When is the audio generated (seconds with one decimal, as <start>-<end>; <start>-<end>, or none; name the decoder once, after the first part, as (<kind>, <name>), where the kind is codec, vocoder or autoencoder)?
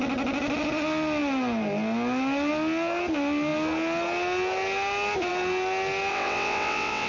6.1-7.1 (vocoder, WaveNeXt)